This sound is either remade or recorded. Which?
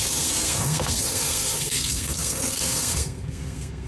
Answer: remade